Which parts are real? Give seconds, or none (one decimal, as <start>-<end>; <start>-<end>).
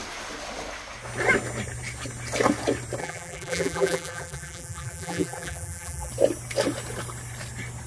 0.0-3.0; 6.1-7.9